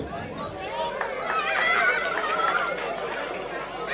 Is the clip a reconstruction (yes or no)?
no